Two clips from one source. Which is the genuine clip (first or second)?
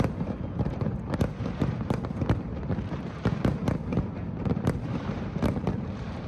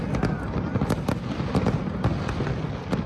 second